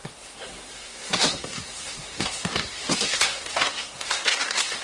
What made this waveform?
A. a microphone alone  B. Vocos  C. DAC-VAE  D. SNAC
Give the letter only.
D